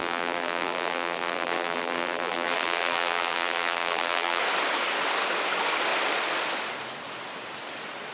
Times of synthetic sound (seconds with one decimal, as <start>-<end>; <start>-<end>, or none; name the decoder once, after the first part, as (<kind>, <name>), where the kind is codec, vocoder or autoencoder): 0.0-4.4 (vocoder, BigVGAN v2)